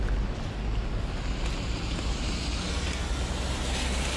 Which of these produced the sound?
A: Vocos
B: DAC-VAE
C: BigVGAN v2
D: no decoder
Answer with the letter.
D